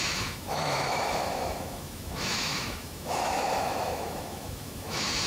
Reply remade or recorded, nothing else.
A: remade